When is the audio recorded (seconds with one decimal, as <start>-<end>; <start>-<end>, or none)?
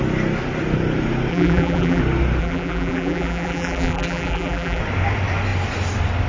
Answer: 0.0-1.3; 2.0-2.4; 4.8-6.3